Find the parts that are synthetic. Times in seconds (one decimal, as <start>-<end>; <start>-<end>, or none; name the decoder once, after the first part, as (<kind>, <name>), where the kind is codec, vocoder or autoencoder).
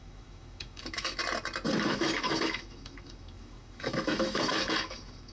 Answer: 0.0-1.2 (autoencoder, DAC-VAE); 1.9-5.3